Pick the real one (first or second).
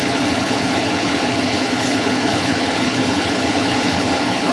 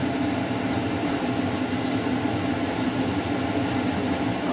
second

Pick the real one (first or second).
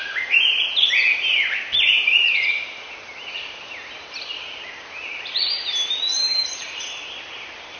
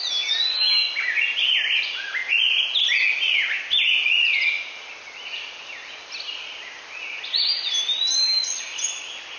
second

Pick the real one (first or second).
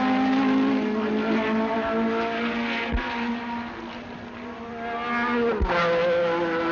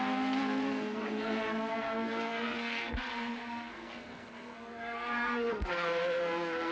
first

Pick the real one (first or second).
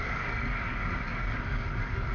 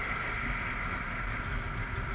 second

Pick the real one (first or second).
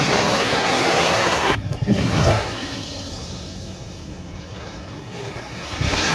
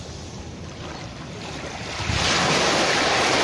second